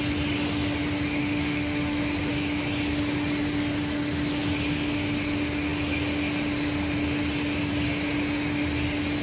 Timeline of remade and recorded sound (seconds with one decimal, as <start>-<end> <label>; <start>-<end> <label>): 0.0-1.2 recorded; 1.2-2.0 remade; 2.0-9.2 recorded

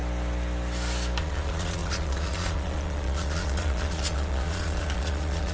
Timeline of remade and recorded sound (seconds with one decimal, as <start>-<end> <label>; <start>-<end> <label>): 0.0-1.2 recorded; 1.2-5.5 remade

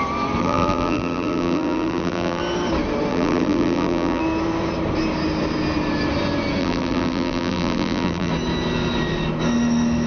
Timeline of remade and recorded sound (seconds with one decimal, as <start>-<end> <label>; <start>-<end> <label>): 0.0-0.4 recorded; 0.4-2.4 remade; 2.4-3.1 recorded; 3.1-4.2 remade; 4.2-6.6 recorded; 6.6-8.3 remade; 8.3-10.1 recorded

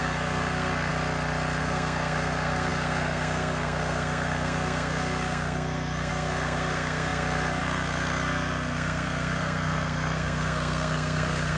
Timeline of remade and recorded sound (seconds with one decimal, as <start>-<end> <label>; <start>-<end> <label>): 0.0-0.9 remade; 0.9-1.6 recorded; 1.6-11.6 remade

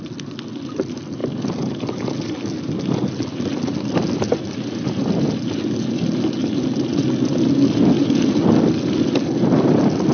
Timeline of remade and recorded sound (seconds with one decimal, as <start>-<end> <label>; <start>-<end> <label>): 0.0-10.1 recorded

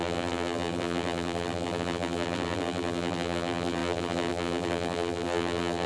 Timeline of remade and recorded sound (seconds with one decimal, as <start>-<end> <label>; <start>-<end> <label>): 0.0-5.9 remade

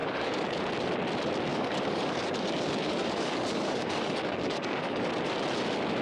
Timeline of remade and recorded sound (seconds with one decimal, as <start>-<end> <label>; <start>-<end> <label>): 0.0-0.6 remade; 0.6-1.5 recorded; 1.5-5.1 remade; 5.1-6.0 recorded